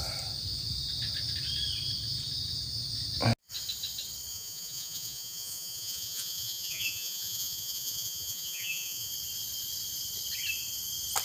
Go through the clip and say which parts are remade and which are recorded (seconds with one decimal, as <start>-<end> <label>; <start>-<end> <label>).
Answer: 0.0-4.3 recorded; 4.3-9.1 remade; 9.1-11.2 recorded